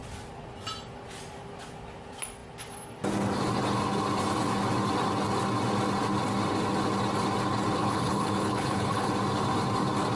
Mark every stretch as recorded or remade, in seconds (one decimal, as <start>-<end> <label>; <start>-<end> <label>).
0.0-7.8 recorded; 7.8-9.1 remade; 9.1-10.2 recorded